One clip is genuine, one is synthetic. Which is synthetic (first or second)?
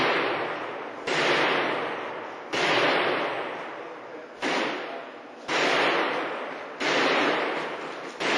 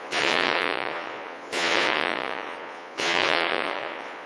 second